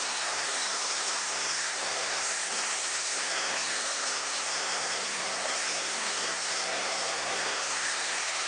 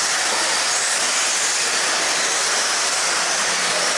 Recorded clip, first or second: second